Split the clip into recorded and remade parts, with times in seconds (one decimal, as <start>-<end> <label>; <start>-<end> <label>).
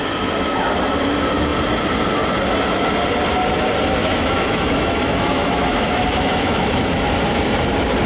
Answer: 0.0-4.0 recorded; 4.0-7.0 remade; 7.0-8.1 recorded